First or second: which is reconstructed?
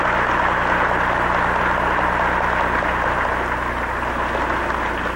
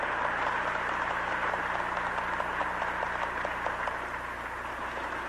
second